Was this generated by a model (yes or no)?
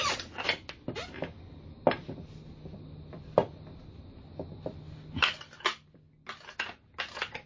no